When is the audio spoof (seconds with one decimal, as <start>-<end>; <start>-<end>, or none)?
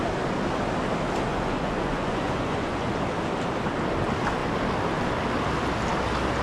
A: 1.3-2.9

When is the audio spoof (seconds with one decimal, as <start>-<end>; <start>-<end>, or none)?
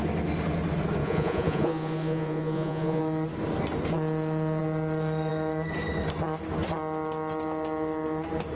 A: 1.0-3.0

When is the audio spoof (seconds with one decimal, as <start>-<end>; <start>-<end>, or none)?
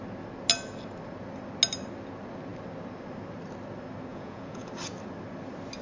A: 4.1-4.7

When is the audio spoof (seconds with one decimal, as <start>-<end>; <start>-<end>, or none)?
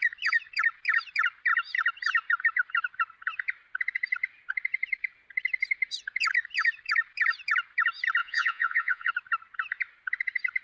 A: 8.2-9.1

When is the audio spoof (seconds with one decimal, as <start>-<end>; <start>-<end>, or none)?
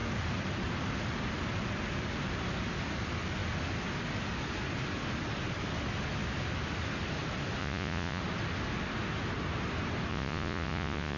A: 7.6-8.2; 10.1-11.2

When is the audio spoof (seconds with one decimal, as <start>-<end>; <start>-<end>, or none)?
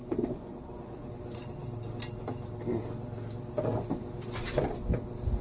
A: 0.0-1.1